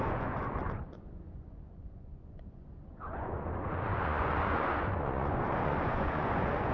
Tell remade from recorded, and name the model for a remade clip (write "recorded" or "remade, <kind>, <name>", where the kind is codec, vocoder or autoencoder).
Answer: remade, vocoder, Vocos